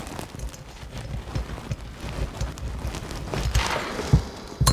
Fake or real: real